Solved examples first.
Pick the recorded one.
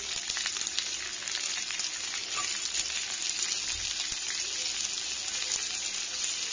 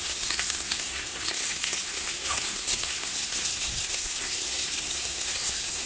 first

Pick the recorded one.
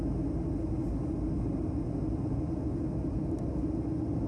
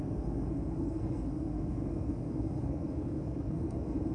first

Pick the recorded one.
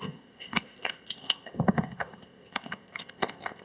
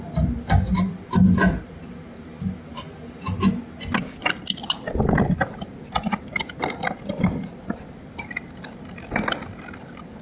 second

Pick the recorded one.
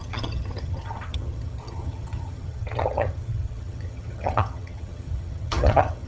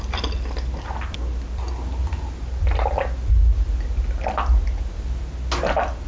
second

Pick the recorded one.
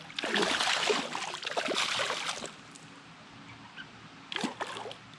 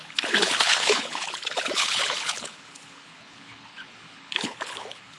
first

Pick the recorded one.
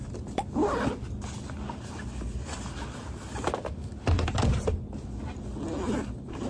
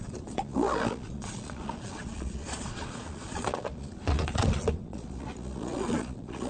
first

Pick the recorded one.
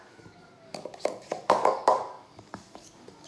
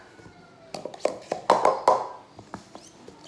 second